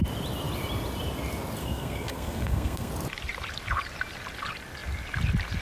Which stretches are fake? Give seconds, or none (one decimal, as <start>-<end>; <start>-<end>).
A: 1.6-2.9